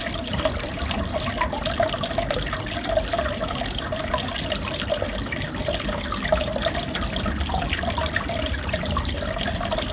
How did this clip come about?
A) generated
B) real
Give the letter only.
B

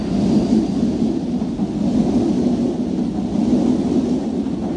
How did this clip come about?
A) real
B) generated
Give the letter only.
A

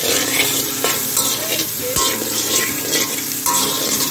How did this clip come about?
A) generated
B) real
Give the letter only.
A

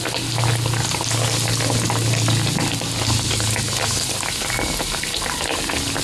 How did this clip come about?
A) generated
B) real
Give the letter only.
B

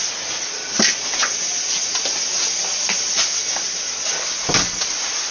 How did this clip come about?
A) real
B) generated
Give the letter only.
A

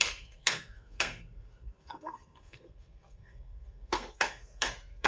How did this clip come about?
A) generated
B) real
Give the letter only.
A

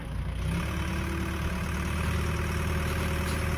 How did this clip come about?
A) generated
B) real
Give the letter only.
B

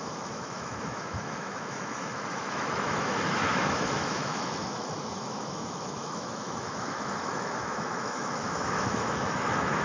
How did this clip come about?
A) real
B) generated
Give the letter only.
B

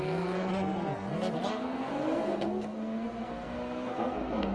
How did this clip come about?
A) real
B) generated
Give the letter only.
B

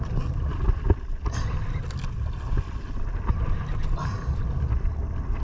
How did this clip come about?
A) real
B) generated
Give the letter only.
A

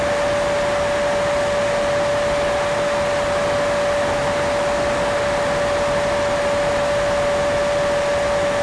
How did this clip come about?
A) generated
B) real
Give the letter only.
B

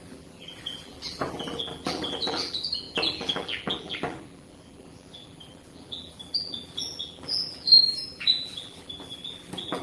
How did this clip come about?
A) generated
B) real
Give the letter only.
A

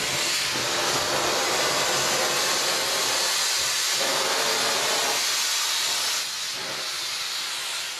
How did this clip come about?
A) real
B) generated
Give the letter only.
A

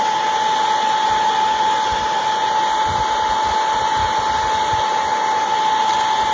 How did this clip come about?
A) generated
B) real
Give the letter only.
B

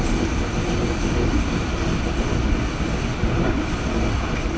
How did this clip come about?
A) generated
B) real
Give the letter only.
B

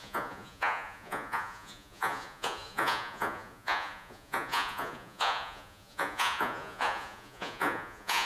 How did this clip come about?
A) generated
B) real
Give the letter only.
A